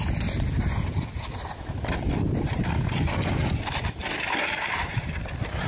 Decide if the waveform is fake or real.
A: real